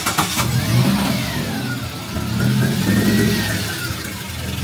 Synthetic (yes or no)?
no